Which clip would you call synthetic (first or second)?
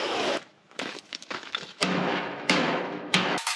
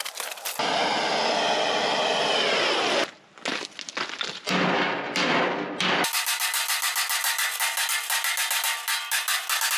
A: first